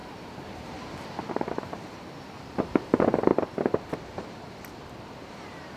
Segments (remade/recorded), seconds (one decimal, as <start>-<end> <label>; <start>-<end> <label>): 0.0-3.3 remade; 3.3-5.3 recorded; 5.3-5.8 remade